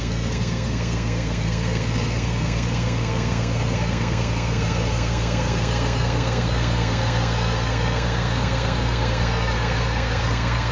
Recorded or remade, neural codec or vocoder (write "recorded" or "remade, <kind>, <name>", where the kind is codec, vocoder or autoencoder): remade, codec, SNAC